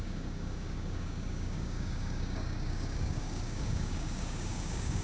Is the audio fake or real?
fake